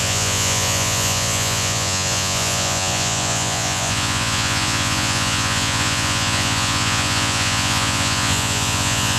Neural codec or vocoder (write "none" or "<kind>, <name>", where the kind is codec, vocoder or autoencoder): vocoder, Vocos